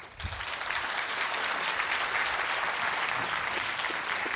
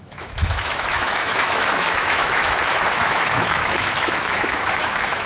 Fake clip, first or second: second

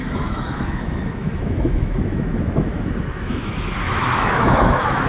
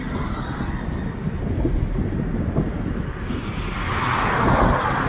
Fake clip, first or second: first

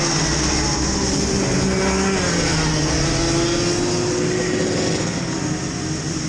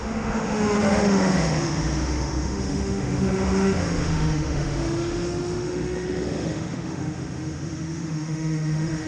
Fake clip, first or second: second